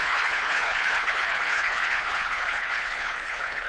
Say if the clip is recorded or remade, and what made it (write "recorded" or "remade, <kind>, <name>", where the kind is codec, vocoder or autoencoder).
remade, codec, HILCodec